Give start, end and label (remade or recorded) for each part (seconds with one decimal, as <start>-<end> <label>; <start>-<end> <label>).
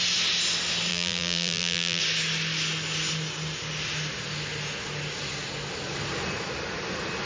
0.0-0.9 recorded; 0.9-2.0 remade; 2.0-7.3 recorded